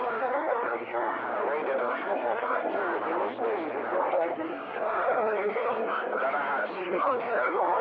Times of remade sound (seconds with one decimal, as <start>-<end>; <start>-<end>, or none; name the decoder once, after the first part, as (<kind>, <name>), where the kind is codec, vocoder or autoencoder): 0.0-1.2 (codec, SNAC); 1.8-2.8; 4.0-6.2; 6.7-7.8